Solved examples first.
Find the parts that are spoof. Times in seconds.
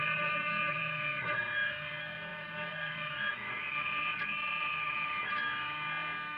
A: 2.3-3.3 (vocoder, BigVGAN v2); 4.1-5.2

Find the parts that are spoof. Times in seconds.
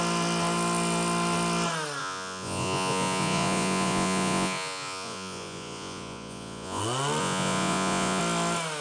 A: 2.0-6.8 (vocoder, Vocos); 7.2-8.2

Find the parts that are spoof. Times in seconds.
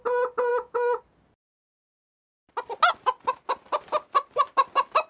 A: 0.5-1.0 (autoencoder, DAC-VAE)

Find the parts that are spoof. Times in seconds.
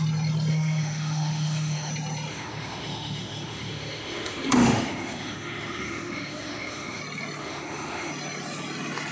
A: 0.5-1.9 (autoencoder, DAC-VAE); 2.3-7.0; 7.4-8.1